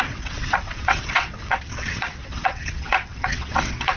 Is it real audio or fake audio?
fake